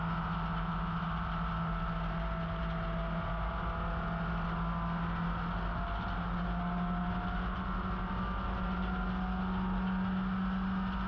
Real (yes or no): yes